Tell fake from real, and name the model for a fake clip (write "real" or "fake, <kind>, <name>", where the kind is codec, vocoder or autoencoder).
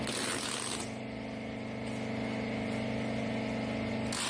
real